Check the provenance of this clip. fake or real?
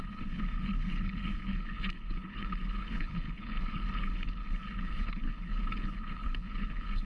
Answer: fake